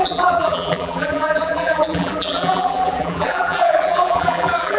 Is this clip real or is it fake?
fake